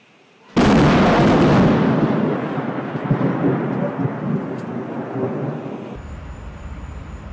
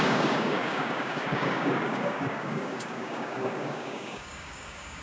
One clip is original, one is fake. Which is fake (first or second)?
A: second